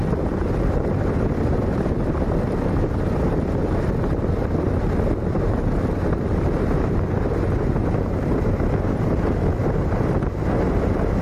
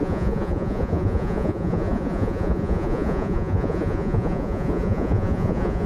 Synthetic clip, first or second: second